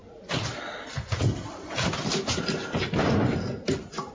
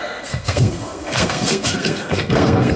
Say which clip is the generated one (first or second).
second